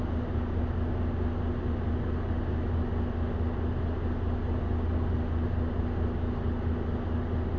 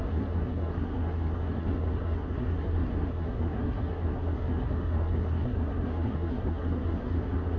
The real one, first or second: first